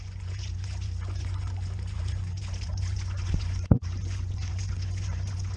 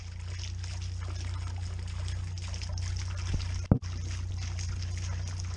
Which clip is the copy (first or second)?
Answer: first